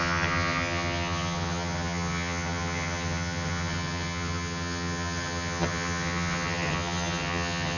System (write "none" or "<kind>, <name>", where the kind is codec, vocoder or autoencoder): vocoder, HiFi-GAN